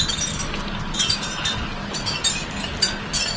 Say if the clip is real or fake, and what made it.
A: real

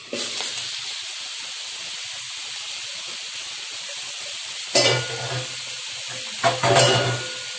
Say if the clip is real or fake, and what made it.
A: real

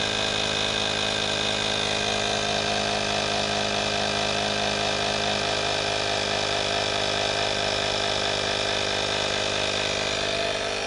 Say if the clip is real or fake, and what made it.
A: real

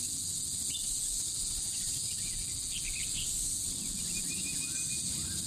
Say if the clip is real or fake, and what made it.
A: real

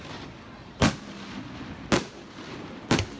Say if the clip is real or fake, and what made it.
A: real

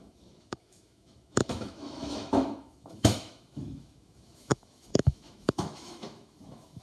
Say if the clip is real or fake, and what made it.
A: fake, autoencoder, DAC-VAE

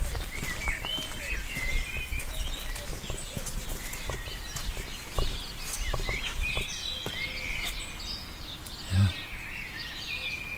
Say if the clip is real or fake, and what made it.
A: real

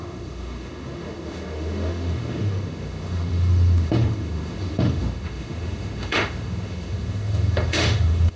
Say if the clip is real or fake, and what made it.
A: fake, autoencoder, DAC-VAE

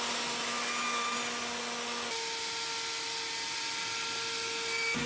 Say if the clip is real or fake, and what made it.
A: real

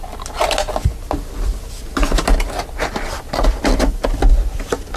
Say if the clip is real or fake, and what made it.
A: real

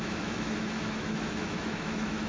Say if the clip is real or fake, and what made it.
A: fake, autoencoder, DAC-VAE